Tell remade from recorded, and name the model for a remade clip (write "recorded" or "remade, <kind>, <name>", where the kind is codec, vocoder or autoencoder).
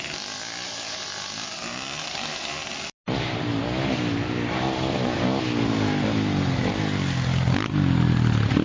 recorded